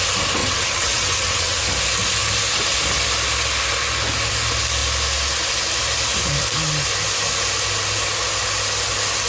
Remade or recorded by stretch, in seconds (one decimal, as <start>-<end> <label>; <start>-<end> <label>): 0.0-0.4 recorded; 0.4-1.6 remade; 1.6-9.3 recorded